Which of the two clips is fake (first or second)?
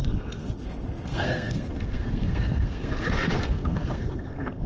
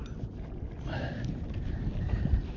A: first